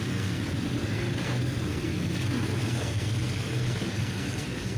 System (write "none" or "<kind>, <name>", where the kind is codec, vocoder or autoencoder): codec, SNAC